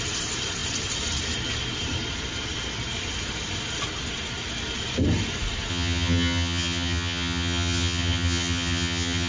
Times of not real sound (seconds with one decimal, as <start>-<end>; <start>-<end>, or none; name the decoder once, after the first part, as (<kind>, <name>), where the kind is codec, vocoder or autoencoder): 5.7-9.3 (vocoder, HiFi-GAN)